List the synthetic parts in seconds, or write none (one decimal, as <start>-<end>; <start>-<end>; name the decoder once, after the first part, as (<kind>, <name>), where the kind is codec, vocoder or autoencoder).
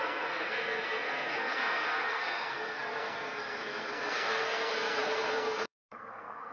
0.0-6.5 (codec, SNAC)